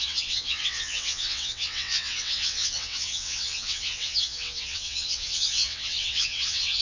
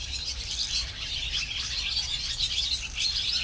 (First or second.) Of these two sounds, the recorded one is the second